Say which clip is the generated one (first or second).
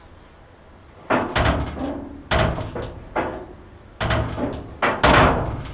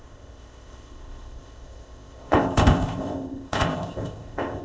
second